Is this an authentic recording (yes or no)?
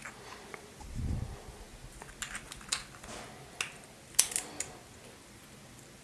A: yes